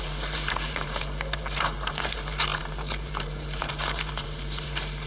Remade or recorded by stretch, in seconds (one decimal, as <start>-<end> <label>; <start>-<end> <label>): 0.0-5.1 remade